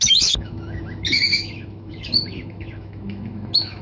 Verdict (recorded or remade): remade